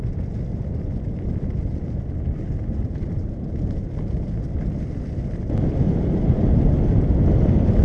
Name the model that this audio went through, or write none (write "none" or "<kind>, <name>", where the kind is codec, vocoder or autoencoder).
none